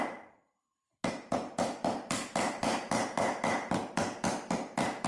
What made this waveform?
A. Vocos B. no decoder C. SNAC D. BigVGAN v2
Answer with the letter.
B